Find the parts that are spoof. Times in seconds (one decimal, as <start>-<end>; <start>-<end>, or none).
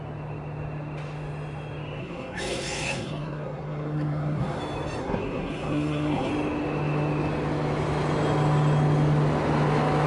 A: 2.0-4.6; 5.0-6.3